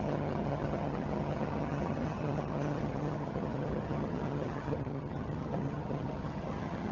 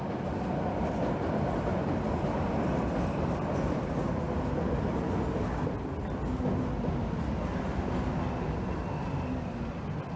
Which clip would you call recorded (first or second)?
second